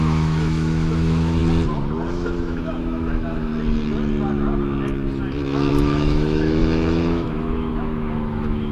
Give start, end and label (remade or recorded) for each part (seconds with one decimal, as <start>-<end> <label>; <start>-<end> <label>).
0.0-1.4 remade; 1.4-2.1 recorded; 2.1-3.5 remade; 3.5-5.7 recorded; 5.7-8.7 remade